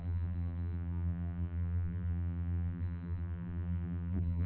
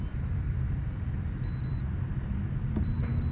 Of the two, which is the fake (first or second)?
first